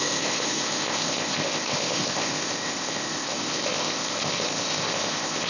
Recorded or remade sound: remade